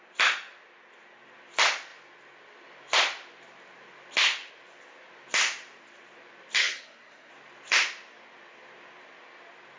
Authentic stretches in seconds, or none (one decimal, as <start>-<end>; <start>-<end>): 0.0-6.6; 7.3-9.8